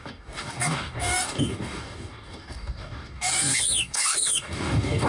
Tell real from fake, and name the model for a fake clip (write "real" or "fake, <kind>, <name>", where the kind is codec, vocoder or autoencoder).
fake, codec, DAC